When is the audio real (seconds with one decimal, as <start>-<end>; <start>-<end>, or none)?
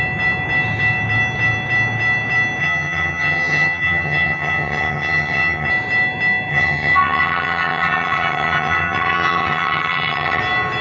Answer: 0.0-2.6; 5.7-6.5; 10.4-10.8